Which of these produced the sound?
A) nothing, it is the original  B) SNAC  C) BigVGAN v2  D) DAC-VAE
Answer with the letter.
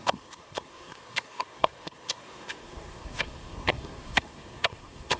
B